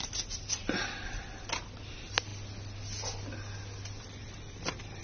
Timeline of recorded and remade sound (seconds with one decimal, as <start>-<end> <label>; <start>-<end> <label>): 0.0-5.0 recorded